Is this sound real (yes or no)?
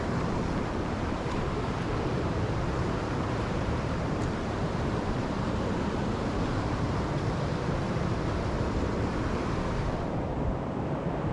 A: no